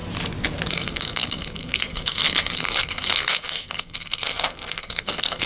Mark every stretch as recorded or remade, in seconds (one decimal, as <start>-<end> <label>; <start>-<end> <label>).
0.0-0.7 recorded; 0.7-5.5 remade